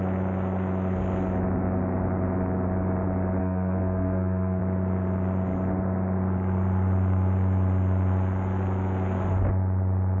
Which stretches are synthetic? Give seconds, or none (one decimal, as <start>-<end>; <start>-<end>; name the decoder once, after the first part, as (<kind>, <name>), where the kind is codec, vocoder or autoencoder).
3.4-4.6 (codec, SNAC)